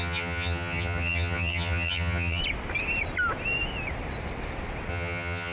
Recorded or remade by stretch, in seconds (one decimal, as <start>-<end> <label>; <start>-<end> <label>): 0.0-2.4 remade; 2.4-4.9 recorded; 4.9-5.5 remade